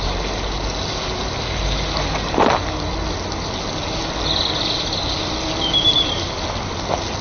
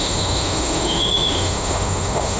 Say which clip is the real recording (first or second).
first